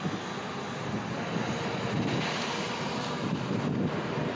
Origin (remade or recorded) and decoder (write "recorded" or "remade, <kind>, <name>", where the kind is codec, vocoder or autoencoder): recorded